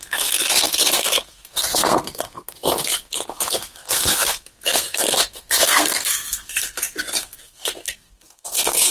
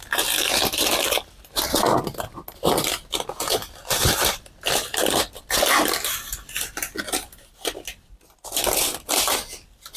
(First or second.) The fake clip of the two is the first